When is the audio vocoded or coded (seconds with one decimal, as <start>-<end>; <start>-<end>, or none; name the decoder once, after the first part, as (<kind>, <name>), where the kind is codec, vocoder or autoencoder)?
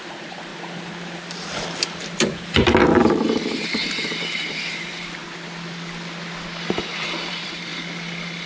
0.0-5.2 (vocoder, BigVGAN v2); 7.3-7.7